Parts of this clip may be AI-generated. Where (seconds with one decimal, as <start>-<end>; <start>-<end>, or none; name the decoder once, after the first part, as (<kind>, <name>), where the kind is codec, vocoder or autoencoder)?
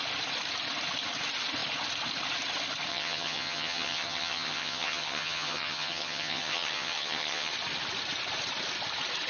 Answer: 2.9-7.5 (vocoder, HiFi-GAN)